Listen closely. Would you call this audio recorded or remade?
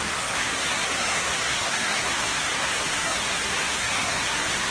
remade